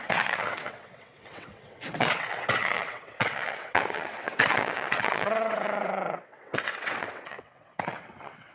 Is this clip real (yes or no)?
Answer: no